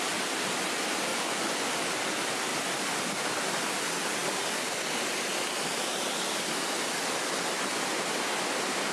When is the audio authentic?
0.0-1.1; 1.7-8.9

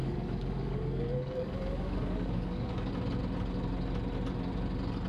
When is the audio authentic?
2.9-5.1

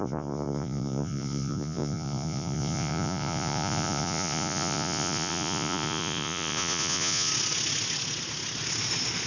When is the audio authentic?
7.3-9.3